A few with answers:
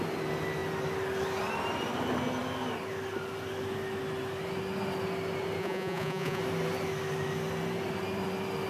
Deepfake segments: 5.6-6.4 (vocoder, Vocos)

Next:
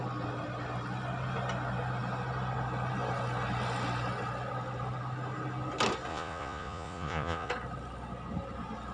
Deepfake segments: 6.1-7.5 (vocoder, Vocos)